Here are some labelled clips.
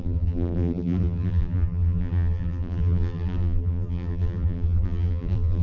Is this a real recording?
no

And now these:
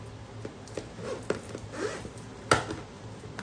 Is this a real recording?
yes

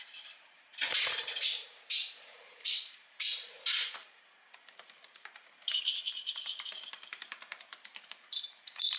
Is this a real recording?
no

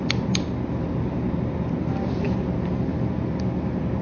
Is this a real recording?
yes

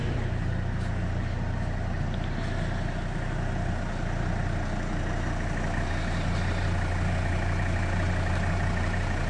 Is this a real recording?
yes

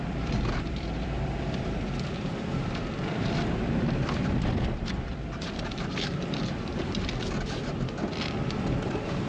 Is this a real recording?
no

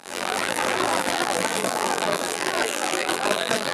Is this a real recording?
no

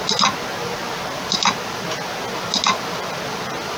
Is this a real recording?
yes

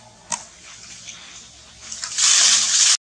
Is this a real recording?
yes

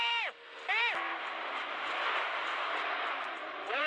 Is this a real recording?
no